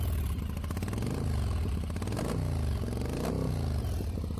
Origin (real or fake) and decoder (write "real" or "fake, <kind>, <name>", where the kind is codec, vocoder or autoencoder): real